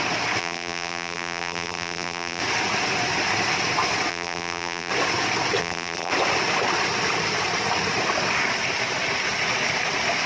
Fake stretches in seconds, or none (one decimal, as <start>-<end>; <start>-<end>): 0.4-2.4; 4.1-4.9; 5.6-6.1